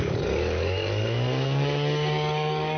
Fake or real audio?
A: fake